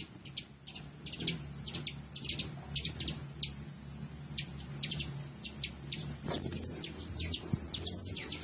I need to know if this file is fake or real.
real